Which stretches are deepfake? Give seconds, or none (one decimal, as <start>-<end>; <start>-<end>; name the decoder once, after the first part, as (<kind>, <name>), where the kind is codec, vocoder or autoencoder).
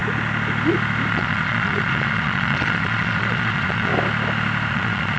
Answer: 1.1-3.9 (vocoder, Vocos); 4.7-5.2